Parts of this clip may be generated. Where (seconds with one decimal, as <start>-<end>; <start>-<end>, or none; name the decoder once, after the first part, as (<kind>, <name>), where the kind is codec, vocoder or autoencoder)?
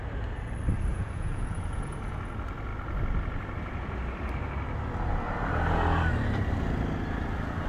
0.9-2.2 (vocoder, Vocos)